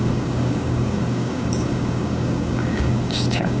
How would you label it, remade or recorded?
remade